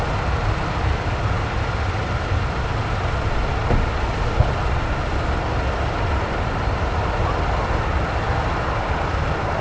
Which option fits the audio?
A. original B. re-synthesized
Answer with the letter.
A